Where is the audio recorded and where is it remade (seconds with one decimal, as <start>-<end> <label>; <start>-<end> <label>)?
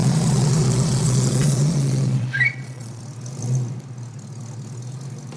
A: 0.0-3.0 remade; 3.0-5.4 recorded